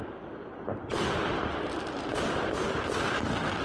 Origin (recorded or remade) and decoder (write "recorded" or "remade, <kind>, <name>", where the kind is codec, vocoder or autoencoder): recorded